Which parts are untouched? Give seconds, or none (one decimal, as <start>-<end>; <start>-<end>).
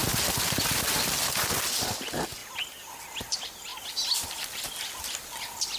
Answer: 0.0-5.8